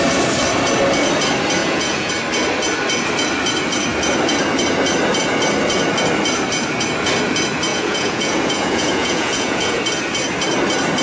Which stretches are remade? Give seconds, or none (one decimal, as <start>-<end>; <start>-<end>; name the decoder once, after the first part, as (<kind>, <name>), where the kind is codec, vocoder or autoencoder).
1.6-2.1 (vocoder, Vocos); 7.7-9.8